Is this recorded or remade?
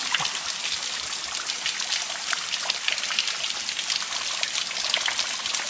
recorded